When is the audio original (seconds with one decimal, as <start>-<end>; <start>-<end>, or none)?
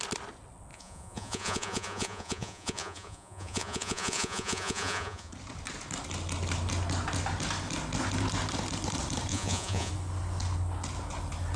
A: 0.0-0.7; 5.3-9.3; 9.9-11.6